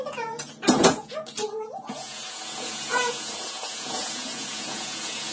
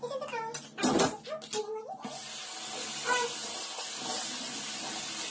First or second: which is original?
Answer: second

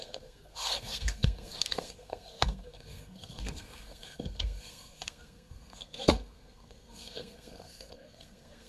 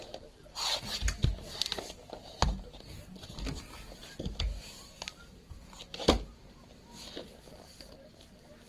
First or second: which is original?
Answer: second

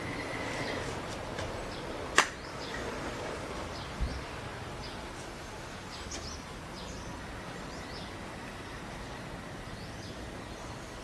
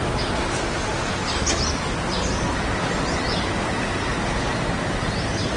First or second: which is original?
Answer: second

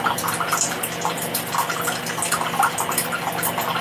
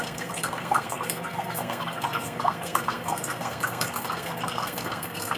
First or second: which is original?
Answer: first